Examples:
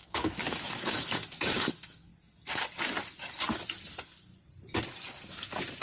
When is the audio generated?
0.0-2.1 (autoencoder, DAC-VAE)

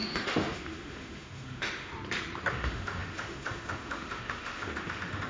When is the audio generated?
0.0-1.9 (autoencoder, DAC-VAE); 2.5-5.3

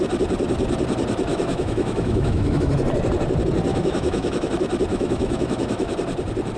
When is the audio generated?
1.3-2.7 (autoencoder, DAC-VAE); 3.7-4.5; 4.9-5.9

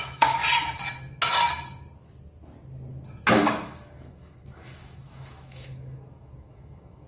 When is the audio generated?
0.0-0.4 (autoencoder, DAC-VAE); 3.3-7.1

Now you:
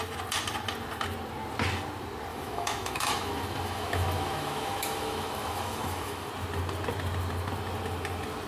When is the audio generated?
2.3-6.3 (autoencoder, DAC-VAE)

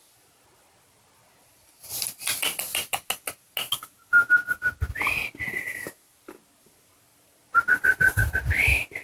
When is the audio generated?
none

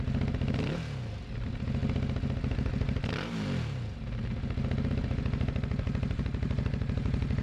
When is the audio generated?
none

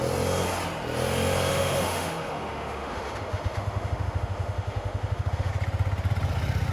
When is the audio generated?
1.5-5.5 (autoencoder, DAC-VAE)